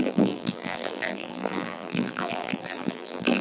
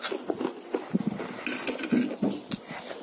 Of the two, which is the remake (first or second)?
first